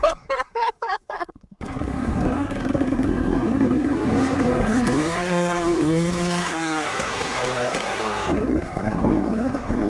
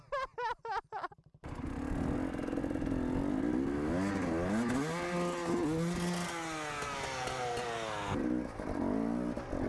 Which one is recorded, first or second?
second